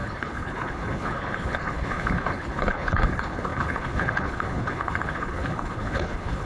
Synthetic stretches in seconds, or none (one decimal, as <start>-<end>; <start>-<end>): 0.0-6.5